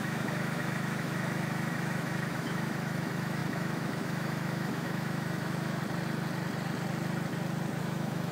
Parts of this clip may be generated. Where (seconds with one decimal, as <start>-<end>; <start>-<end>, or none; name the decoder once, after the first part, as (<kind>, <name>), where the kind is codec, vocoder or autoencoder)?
0.0-5.8 (autoencoder, DAC-VAE); 7.8-8.3